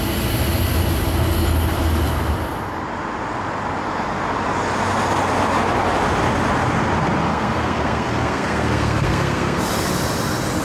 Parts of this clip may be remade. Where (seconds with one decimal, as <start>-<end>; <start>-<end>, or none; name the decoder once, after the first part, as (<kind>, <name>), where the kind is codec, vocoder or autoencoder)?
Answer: 7.3-9.6 (codec, SNAC)